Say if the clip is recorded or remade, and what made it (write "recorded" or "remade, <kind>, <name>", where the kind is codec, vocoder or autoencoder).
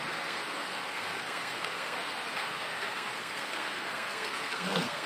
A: remade, codec, SNAC